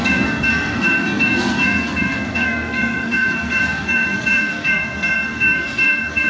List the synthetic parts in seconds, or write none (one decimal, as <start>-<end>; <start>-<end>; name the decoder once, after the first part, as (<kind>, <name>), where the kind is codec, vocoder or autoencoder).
0.0-6.3 (codec, SNAC)